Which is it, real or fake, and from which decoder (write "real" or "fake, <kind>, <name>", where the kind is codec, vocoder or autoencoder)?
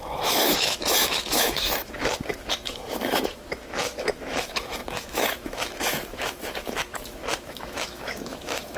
fake, autoencoder, DAC-VAE